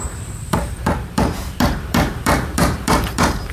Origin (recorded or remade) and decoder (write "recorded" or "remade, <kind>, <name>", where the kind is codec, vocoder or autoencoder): remade, vocoder, BigVGAN v2